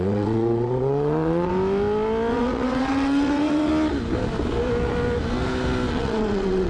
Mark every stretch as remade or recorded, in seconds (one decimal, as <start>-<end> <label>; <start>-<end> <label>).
0.0-1.5 remade; 1.5-2.3 recorded; 2.3-3.7 remade; 3.7-5.9 recorded; 5.9-6.7 remade